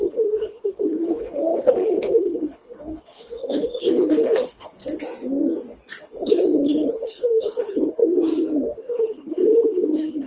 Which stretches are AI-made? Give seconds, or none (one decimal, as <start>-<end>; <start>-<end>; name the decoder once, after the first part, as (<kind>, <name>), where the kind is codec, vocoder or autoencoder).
0.0-4.8 (codec, HILCodec); 6.0-8.0; 8.9-10.3